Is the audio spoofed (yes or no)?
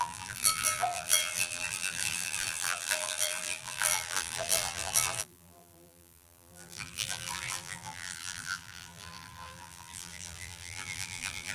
yes